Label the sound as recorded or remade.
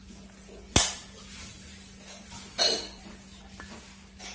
recorded